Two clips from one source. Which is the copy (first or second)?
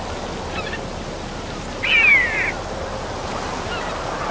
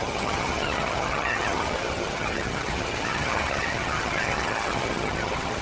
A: second